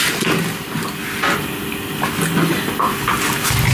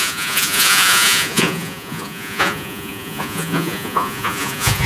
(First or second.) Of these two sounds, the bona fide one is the first